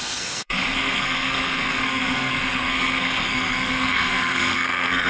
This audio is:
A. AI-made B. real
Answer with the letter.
A